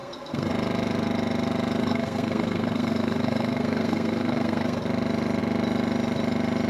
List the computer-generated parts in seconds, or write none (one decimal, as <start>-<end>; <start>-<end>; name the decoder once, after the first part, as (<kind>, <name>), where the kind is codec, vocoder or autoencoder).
0.0-0.5 (codec, SNAC); 1.8-4.8

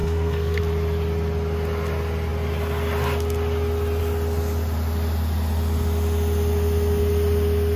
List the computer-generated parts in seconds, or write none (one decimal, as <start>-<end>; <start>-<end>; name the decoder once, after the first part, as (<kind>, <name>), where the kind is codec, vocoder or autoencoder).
0.0-0.6 (codec, SNAC)

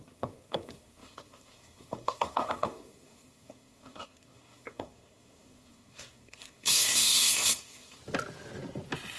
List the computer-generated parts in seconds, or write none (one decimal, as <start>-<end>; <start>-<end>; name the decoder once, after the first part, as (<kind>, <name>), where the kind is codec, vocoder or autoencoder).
0.0-8.0 (codec, SNAC)

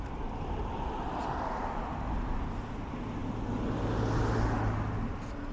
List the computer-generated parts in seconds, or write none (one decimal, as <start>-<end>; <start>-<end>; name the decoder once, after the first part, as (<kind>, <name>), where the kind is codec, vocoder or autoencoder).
none

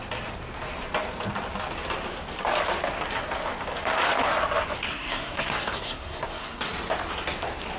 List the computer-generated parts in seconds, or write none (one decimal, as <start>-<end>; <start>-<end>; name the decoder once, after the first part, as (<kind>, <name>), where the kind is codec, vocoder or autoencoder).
4.9-6.7 (codec, SNAC)

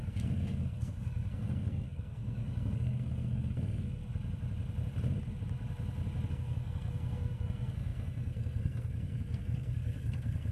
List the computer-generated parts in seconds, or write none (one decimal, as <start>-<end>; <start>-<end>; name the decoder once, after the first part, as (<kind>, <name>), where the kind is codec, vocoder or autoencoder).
0.0-4.0 (codec, SNAC); 6.3-10.5